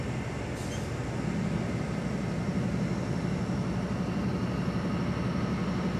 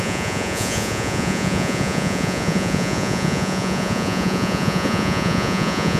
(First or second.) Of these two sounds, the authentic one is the first